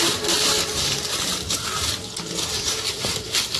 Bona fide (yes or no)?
yes